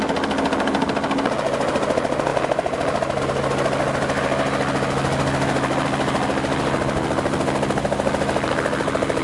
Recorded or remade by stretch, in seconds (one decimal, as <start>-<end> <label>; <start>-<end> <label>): 0.0-9.2 recorded

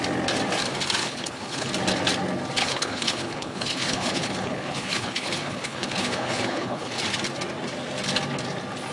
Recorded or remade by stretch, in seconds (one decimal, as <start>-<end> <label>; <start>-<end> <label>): 0.0-1.0 recorded; 1.0-1.7 remade; 1.7-2.6 recorded; 2.6-7.0 remade; 7.0-8.9 recorded

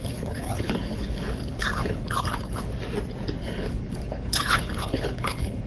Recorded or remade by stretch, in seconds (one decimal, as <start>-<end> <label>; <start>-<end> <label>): 0.0-2.7 remade; 2.7-3.4 recorded; 3.4-5.7 remade

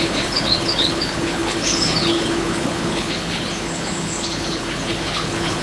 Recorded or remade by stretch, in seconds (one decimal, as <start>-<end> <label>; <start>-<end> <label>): 0.0-5.6 remade

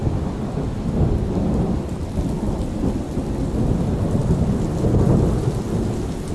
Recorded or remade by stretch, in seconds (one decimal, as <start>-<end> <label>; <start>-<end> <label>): 0.0-6.3 recorded

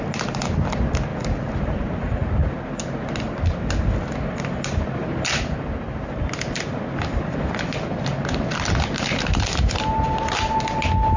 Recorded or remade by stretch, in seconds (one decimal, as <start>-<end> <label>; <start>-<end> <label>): 0.0-11.2 recorded